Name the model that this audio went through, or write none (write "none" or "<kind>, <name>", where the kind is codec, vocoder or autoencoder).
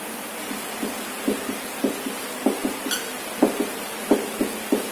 none